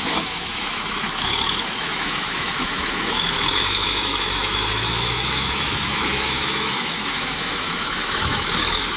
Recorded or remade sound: remade